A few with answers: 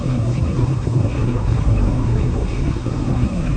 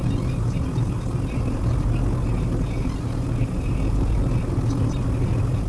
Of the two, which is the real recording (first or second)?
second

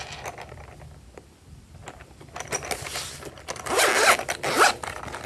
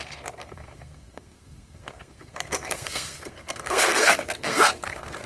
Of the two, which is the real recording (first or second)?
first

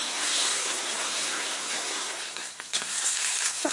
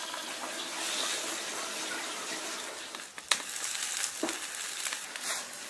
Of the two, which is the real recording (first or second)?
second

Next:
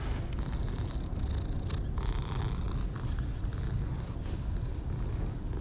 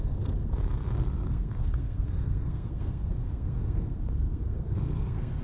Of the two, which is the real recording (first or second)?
first